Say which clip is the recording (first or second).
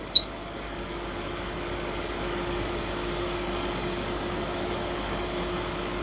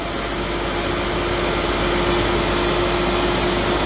second